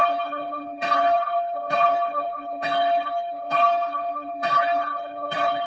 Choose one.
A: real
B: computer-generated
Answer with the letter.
B